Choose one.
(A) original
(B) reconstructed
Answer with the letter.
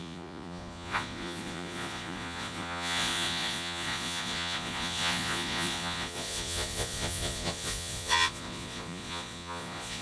B